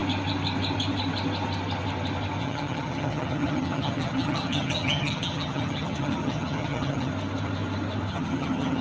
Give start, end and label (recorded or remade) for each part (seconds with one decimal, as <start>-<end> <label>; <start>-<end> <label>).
0.0-2.4 recorded; 2.4-7.1 remade; 7.1-8.1 recorded; 8.1-8.8 remade